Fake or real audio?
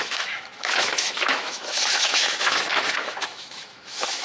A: fake